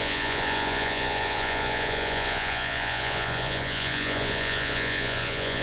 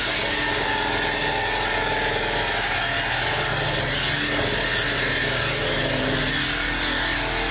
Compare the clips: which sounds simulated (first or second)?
first